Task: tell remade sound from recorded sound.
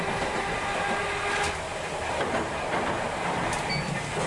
recorded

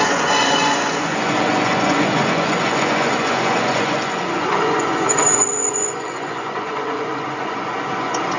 remade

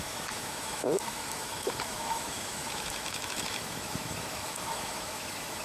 remade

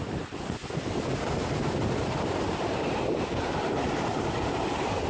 recorded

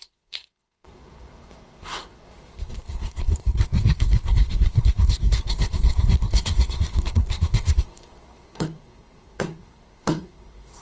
remade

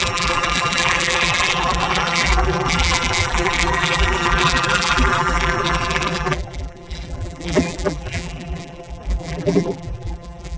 remade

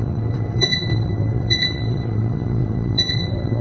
remade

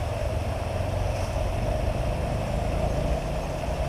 recorded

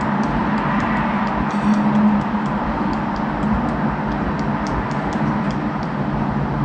recorded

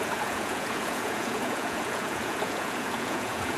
remade